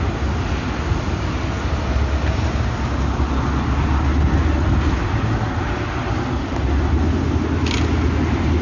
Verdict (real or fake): real